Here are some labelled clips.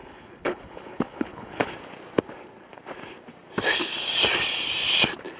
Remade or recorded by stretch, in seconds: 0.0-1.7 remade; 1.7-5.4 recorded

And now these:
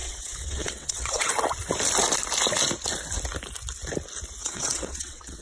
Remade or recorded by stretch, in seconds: 0.0-1.3 remade; 1.3-4.4 recorded; 4.4-5.4 remade

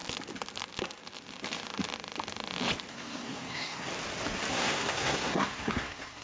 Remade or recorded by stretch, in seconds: 0.0-2.9 recorded; 2.9-3.9 remade; 3.9-4.5 recorded; 4.5-6.2 remade

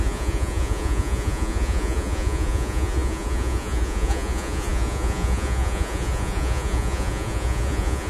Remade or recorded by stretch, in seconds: 0.0-8.1 remade